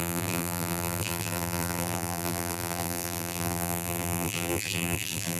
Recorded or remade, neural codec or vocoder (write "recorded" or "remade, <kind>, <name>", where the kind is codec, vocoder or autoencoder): remade, vocoder, BigVGAN v2